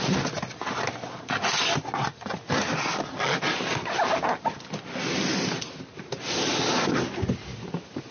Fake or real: real